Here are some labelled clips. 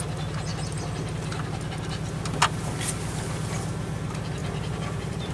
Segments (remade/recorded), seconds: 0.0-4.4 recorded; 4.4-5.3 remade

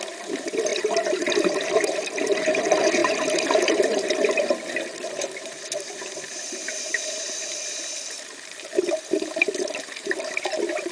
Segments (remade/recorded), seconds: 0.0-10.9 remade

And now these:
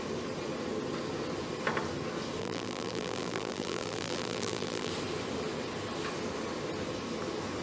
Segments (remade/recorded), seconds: 0.0-2.4 recorded; 2.4-4.9 remade; 4.9-7.6 recorded

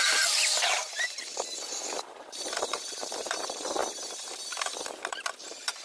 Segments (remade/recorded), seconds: 0.0-3.8 remade; 3.8-5.1 recorded; 5.1-5.8 remade

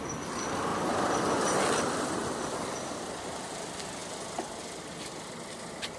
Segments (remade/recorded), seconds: 0.0-4.0 remade; 4.0-4.9 recorded; 4.9-6.0 remade

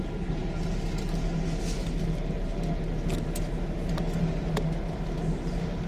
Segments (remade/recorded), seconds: 0.0-5.9 recorded

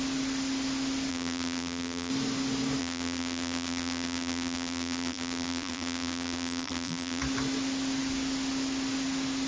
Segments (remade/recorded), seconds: 0.0-1.1 recorded; 1.1-2.1 remade; 2.1-2.8 recorded; 2.8-7.2 remade; 7.2-9.5 recorded

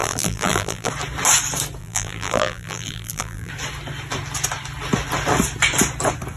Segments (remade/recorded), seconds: 0.0-0.9 remade; 0.9-1.8 recorded; 1.8-3.5 remade; 3.5-6.4 recorded